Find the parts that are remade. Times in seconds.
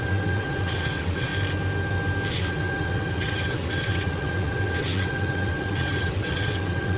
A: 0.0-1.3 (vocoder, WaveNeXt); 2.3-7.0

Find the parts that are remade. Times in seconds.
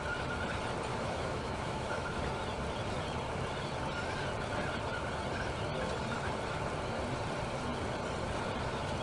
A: 0.9-2.2 (autoencoder, DAC-VAE)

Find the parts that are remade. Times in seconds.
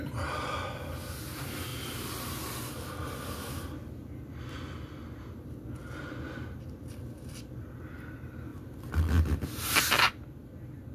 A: none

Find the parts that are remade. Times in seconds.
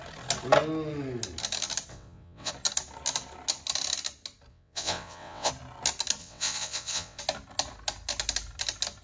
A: 1.9-2.5 (vocoder, WaveNeXt); 4.5-5.5; 6.2-7.2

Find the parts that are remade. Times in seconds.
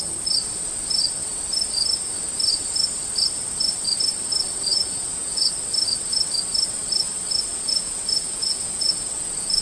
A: 4.7-5.5 (vocoder, Vocos); 7.5-9.6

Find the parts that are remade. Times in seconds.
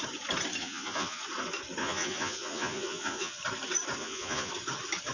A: 0.6-1.2 (vocoder, Vocos); 1.8-3.4; 4.0-4.5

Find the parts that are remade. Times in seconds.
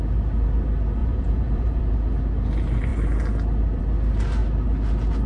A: 1.0-1.8 (vocoder, Vocos)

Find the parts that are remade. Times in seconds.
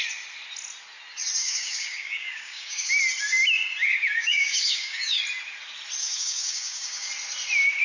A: 1.4-2.9 (codec, DAC); 3.8-5.2; 6.0-7.1